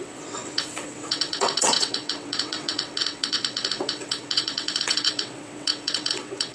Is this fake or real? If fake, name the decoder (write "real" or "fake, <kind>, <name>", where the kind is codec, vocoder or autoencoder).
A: fake, vocoder, WaveNeXt